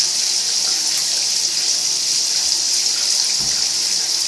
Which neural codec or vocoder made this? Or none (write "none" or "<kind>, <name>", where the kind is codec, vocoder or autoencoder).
none